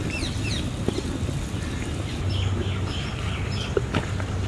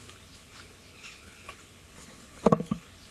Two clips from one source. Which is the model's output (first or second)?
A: second